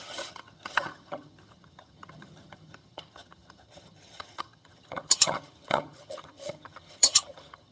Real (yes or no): no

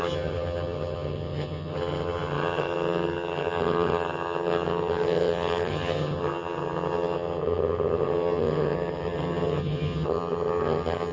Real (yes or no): no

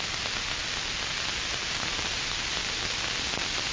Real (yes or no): yes